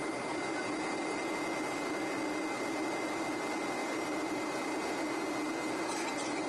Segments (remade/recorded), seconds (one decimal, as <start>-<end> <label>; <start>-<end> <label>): 0.0-6.5 recorded